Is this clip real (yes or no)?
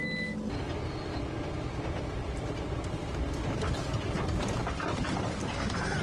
yes